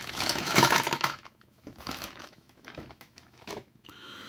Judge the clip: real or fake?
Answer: fake